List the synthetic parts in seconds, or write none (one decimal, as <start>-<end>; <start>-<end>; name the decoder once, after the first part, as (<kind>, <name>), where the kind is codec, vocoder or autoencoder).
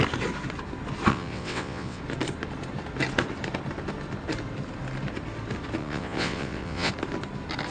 1.1-2.0 (vocoder, WaveNeXt); 5.8-6.9